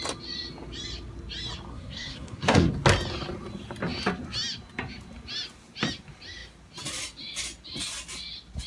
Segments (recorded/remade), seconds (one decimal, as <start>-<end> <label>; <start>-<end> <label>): 0.0-1.7 recorded; 1.7-2.7 remade; 2.7-8.7 recorded